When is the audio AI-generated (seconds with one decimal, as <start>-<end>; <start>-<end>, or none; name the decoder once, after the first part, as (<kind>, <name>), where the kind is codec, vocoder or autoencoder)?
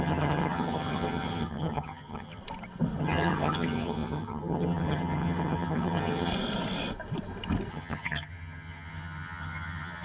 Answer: 0.0-2.4 (vocoder, HiFi-GAN); 3.0-6.3; 7.7-10.0